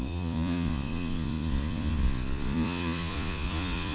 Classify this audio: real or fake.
fake